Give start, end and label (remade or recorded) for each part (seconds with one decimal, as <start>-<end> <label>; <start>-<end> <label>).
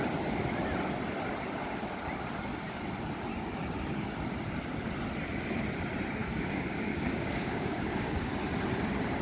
0.0-6.2 recorded; 6.2-8.3 remade; 8.3-9.2 recorded